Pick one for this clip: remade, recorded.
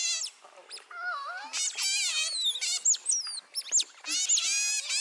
recorded